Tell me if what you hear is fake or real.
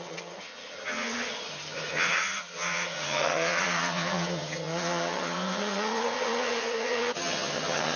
fake